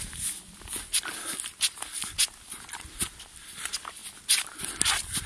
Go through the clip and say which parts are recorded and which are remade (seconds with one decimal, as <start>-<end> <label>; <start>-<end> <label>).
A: 0.0-5.3 recorded